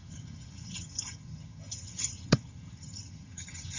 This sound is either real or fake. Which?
fake